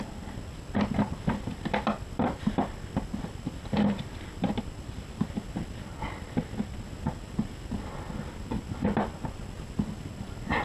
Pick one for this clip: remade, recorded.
recorded